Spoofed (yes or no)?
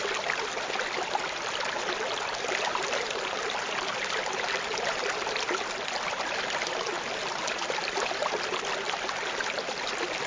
no